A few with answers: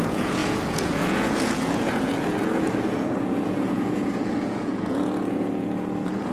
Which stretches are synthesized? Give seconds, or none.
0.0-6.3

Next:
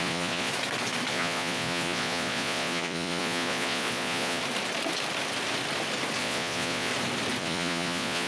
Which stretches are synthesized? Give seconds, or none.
0.0-0.5; 1.1-4.4; 6.2-6.9; 7.4-8.3

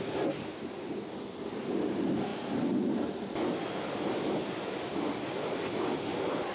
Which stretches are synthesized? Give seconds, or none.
none

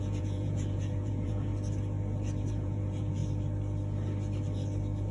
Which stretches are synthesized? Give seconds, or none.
0.0-1.5; 2.5-3.2